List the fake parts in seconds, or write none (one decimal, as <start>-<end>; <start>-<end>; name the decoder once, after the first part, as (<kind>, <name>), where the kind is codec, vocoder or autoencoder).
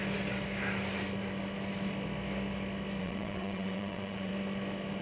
3.0-4.3 (vocoder, WaveNeXt)